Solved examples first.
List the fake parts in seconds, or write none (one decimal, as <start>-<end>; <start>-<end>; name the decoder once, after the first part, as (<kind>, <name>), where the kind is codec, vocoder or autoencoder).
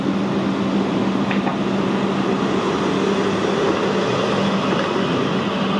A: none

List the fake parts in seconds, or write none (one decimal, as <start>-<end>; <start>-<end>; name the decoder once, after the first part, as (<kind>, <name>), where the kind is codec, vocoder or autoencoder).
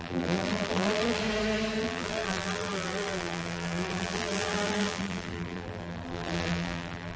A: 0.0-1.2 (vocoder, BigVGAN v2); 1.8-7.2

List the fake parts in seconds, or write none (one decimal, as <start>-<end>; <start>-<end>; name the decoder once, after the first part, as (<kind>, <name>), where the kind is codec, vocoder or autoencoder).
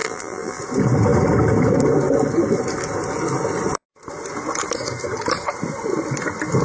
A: 0.0-0.6 (vocoder, BigVGAN v2)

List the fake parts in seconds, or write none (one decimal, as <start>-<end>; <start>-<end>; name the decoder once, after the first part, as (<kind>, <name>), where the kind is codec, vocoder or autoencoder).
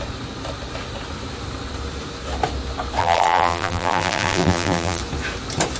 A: 3.0-5.0 (vocoder, BigVGAN v2)